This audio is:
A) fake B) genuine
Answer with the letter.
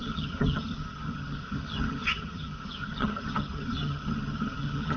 A